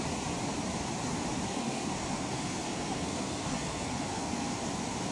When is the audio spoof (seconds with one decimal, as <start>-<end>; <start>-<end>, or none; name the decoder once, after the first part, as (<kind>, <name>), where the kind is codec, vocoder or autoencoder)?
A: 1.5-4.6 (codec, SNAC)